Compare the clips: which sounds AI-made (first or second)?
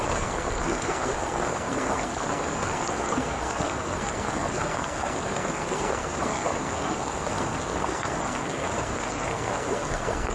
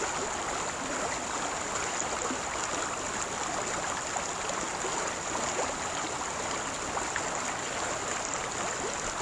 first